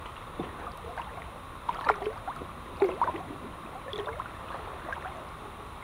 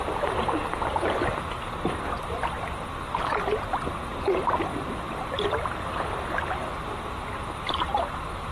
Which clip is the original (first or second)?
first